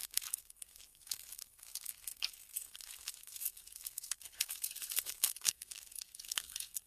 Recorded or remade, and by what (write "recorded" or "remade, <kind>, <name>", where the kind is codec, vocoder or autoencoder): remade, codec, SNAC